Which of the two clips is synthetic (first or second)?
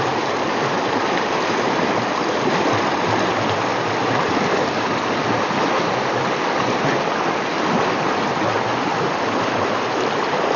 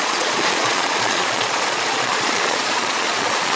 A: second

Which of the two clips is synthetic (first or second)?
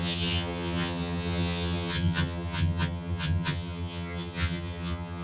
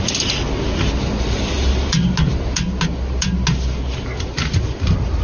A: first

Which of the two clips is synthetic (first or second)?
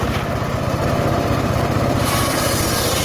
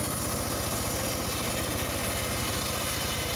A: first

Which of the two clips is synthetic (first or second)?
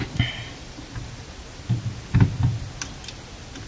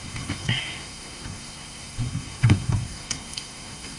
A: second